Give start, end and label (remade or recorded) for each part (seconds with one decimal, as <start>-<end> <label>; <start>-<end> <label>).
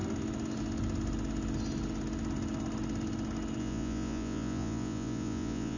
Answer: 0.0-3.6 recorded; 3.6-5.8 remade